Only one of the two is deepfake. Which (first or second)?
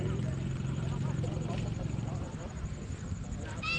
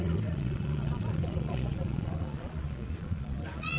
second